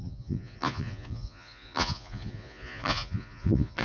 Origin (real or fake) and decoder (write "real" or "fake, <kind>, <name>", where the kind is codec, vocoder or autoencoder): fake, vocoder, Vocos